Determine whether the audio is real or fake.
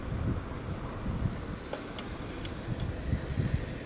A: real